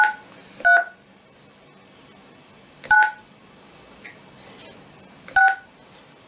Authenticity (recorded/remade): recorded